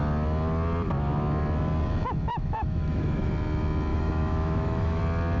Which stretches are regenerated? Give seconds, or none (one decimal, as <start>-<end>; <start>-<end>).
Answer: 2.3-3.3; 3.9-5.0